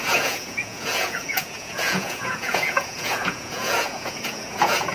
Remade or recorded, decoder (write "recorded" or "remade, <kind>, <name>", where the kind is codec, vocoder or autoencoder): remade, vocoder, Vocos